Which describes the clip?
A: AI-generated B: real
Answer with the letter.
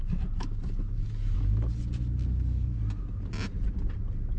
B